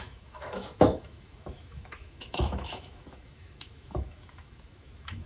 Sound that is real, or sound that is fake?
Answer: fake